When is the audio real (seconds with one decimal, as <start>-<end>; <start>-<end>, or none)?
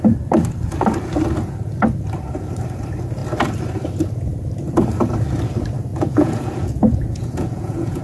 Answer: 0.0-5.9